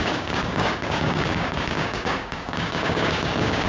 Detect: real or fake fake